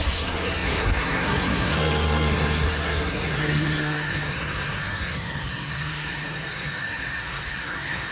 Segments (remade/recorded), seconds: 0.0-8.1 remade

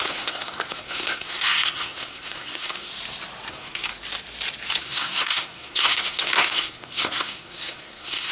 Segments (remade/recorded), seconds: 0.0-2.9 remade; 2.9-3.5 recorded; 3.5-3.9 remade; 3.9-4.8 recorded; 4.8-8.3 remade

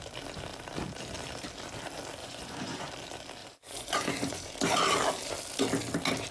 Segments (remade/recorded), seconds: 0.0-2.2 recorded; 2.2-2.9 remade; 2.9-3.4 recorded; 3.4-4.5 remade; 4.5-6.3 recorded

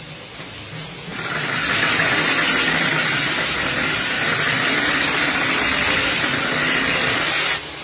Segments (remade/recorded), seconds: 0.0-7.8 recorded

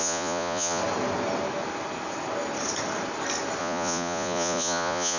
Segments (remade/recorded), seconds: 0.0-0.8 remade; 0.8-3.6 recorded; 3.6-5.2 remade

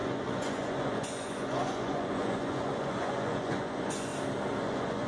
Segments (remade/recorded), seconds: 0.0-4.1 remade; 4.1-4.6 recorded; 4.6-5.1 remade

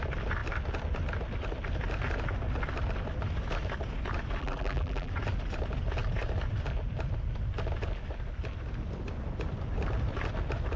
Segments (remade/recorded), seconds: 0.0-4.4 recorded; 4.4-5.1 remade; 5.1-10.8 recorded